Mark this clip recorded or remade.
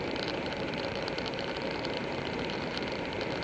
remade